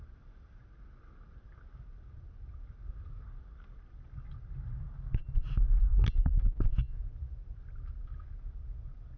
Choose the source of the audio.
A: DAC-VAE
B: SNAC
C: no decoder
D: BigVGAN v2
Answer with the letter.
C